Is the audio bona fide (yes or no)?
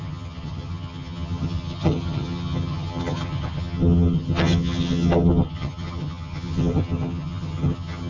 no